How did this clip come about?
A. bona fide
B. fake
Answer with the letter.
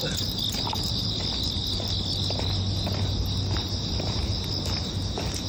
A